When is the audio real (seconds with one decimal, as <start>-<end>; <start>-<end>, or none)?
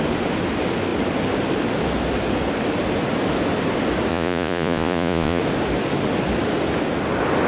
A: 0.0-4.1; 5.4-7.5